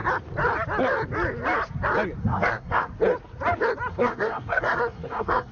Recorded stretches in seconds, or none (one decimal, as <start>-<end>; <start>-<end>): 0.0-2.2; 2.9-3.9